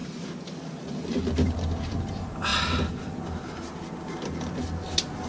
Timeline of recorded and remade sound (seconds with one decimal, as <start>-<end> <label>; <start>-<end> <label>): 0.0-1.5 remade; 1.5-5.3 recorded

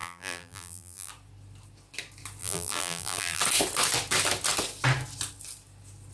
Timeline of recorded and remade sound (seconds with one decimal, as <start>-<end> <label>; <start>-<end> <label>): 0.0-1.1 remade; 1.1-2.4 recorded; 2.4-3.4 remade; 3.4-6.1 recorded

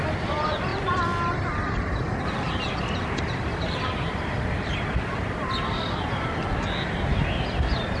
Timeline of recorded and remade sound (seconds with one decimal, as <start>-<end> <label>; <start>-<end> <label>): 0.0-0.7 recorded; 0.7-5.5 remade; 5.5-8.0 recorded

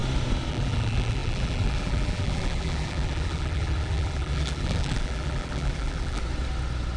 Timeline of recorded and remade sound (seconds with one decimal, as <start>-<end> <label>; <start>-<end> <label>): 0.0-0.5 recorded; 0.5-6.2 remade; 6.2-7.0 recorded

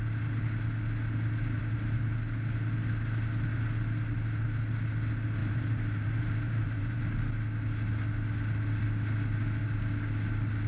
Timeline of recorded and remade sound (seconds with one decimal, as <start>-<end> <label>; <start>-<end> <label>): 0.0-5.4 recorded; 5.4-7.0 remade; 7.0-10.7 recorded